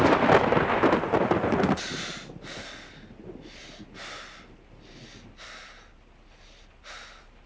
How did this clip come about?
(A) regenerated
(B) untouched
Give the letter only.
B